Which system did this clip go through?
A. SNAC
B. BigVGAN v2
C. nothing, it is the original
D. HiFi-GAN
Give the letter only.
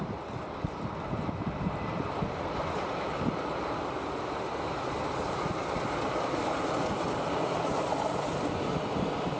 C